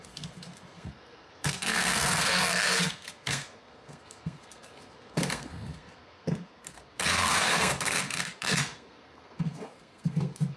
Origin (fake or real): fake